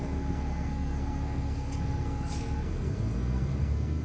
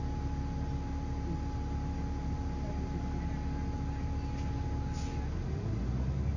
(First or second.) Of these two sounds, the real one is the second